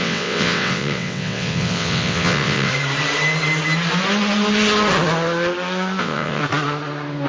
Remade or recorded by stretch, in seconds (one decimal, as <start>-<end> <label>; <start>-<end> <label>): 0.0-2.7 remade; 2.7-6.0 recorded; 6.0-6.4 remade; 6.4-7.3 recorded